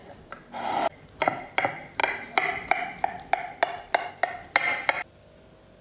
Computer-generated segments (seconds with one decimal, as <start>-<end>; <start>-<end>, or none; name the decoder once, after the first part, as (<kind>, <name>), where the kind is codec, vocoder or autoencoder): 0.0-0.5 (vocoder, BigVGAN v2)